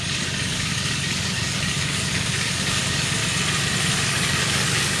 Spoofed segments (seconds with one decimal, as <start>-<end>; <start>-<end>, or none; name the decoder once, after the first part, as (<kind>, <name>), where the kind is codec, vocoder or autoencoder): 0.0-3.2 (codec, DAC); 3.9-5.0